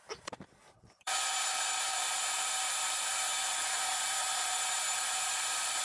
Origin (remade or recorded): remade